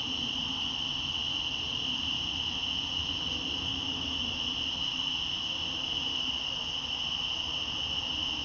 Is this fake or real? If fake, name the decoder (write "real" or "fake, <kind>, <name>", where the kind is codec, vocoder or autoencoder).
real